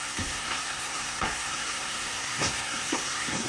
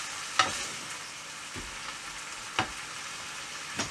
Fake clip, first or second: first